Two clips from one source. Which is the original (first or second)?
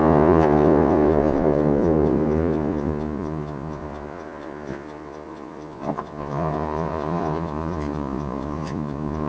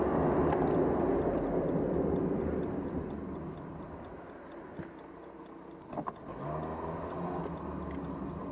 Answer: second